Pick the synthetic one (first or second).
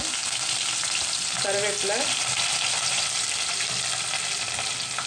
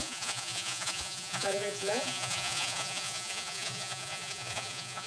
second